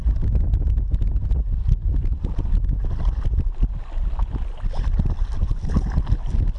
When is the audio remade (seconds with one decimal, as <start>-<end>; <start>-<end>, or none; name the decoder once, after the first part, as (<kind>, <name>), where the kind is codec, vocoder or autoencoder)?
none

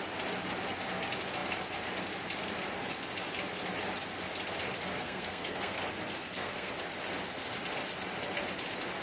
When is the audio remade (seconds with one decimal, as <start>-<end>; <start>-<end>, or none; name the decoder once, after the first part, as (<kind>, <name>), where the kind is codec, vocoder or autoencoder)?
4.9-5.8 (codec, SNAC); 6.2-6.7

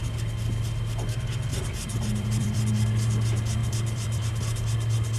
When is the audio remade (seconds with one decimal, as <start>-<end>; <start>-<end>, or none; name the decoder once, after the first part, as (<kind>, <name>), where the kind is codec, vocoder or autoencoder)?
1.5-2.7 (vocoder, BigVGAN v2); 3.6-4.4

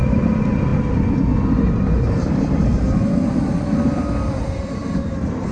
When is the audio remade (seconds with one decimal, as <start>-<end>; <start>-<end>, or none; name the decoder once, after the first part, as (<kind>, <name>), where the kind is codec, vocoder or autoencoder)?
none

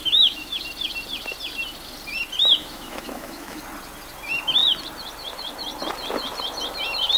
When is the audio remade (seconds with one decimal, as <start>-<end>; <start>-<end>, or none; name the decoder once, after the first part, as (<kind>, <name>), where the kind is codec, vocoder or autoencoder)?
0.0-0.6 (autoencoder, DAC-VAE); 2.6-3.6